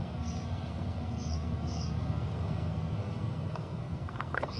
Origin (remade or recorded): remade